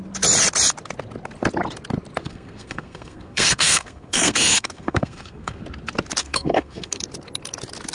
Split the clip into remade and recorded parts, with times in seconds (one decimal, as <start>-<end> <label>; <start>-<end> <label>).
0.0-2.2 recorded; 2.2-5.6 remade; 5.6-6.2 recorded; 6.2-7.0 remade; 7.0-7.9 recorded